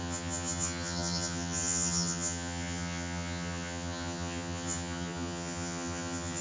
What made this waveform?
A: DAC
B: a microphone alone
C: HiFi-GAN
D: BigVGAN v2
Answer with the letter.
C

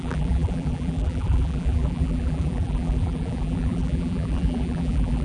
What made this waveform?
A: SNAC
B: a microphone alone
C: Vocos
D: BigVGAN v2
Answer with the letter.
D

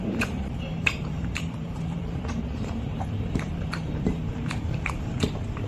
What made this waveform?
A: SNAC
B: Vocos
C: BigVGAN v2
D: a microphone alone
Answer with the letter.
C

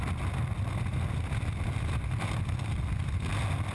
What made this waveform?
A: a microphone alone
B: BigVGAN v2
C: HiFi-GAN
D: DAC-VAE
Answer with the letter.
A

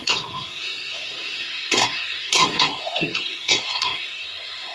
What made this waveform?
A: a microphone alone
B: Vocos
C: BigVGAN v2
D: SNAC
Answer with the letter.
D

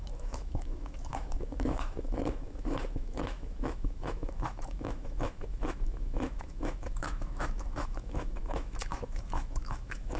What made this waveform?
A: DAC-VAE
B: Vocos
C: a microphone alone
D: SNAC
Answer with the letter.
A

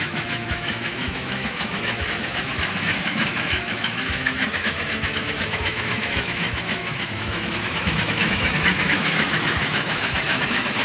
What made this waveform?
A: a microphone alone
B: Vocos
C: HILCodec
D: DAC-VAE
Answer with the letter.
D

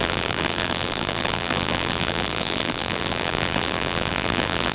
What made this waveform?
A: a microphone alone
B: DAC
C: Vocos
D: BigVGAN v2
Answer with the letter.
D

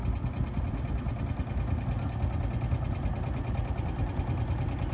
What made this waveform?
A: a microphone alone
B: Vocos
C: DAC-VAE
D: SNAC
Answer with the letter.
A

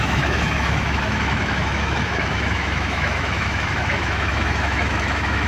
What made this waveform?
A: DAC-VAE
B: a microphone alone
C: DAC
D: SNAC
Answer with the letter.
A